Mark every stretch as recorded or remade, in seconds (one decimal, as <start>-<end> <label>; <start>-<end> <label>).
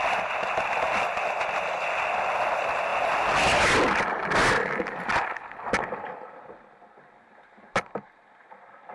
0.0-8.9 recorded